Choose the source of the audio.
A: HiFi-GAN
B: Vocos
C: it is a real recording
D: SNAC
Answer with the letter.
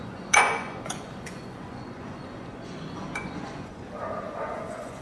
B